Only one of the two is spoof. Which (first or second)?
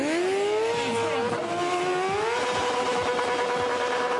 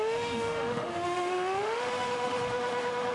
second